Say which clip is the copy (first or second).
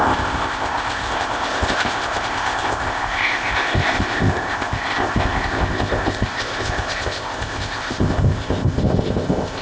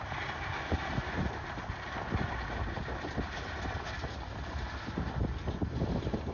first